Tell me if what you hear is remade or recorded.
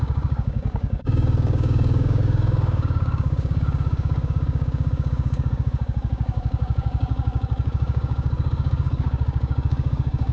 remade